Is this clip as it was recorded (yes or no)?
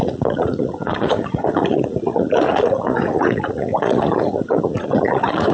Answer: no